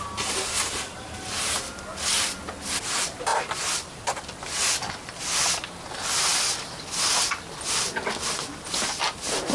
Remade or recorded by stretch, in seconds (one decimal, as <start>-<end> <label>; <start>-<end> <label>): 0.0-3.3 recorded; 3.3-4.0 remade; 4.0-9.5 recorded